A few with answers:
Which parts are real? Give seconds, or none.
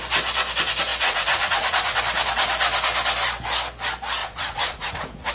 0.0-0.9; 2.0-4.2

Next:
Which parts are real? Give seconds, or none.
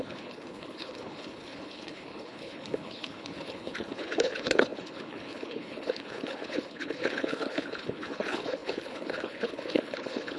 none